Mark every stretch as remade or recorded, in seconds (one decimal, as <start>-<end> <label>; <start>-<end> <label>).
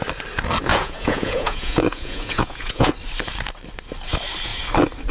0.0-0.7 recorded; 0.7-2.9 remade; 2.9-5.1 recorded